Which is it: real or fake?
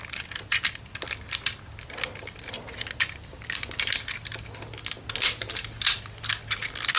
real